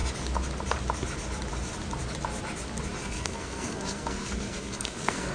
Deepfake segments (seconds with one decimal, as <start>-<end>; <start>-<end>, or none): 3.0-5.3